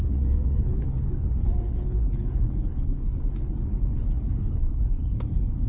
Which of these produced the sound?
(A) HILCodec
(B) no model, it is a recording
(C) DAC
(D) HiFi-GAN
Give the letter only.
A